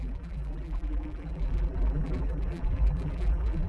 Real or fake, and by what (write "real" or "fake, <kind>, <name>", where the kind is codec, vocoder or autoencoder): fake, vocoder, BigVGAN v2